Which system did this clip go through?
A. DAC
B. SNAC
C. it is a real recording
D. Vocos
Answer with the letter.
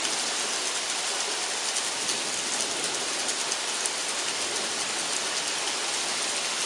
C